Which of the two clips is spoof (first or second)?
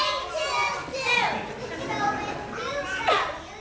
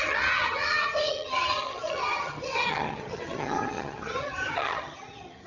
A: second